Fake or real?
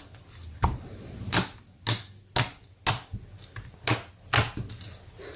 real